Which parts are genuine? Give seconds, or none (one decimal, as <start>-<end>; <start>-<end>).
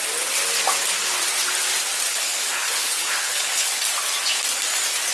0.0-2.1; 3.8-5.1